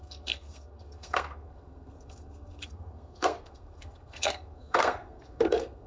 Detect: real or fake fake